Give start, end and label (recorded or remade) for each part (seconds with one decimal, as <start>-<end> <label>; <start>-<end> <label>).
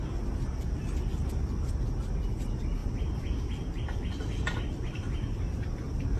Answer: 0.0-6.2 recorded